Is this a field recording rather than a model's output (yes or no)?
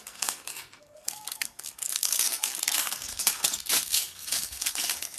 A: no